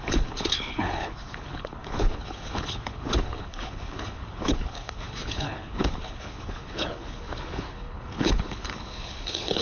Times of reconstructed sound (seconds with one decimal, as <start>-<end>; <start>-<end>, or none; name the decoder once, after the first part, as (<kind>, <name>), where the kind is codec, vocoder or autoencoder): 0.0-9.6 (codec, HILCodec)